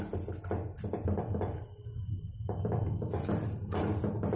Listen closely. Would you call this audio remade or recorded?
recorded